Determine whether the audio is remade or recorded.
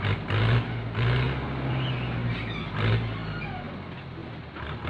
recorded